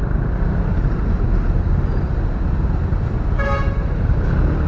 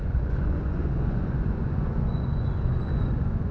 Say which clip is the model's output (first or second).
second